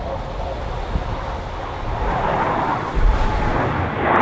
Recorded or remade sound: recorded